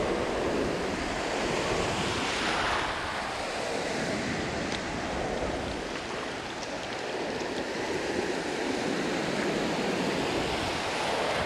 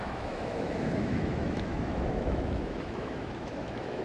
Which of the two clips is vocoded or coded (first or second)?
second